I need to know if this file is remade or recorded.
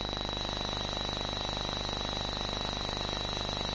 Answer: remade